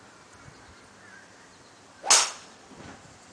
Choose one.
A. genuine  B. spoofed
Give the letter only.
A